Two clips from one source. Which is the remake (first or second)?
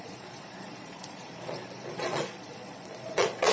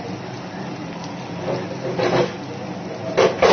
first